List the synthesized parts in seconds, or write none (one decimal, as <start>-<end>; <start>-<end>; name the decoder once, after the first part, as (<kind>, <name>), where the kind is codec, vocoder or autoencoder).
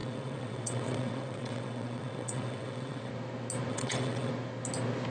0.0-3.1 (vocoder, WaveNeXt); 3.7-4.3